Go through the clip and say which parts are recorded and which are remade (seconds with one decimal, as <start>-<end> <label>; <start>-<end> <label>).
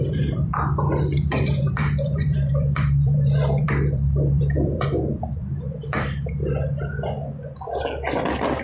0.0-0.5 remade; 0.5-1.2 recorded; 1.2-6.4 remade; 6.4-8.6 recorded